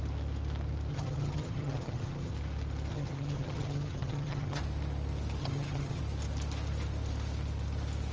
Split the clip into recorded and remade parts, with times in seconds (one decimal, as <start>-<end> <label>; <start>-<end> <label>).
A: 0.0-0.9 recorded; 0.9-2.3 remade; 2.3-2.9 recorded; 2.9-4.6 remade; 4.6-5.4 recorded; 5.4-6.0 remade; 6.0-8.1 recorded